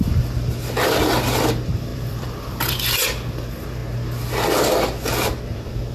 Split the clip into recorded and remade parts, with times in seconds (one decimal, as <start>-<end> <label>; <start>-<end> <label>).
0.0-1.9 recorded; 1.9-2.8 remade; 2.8-5.9 recorded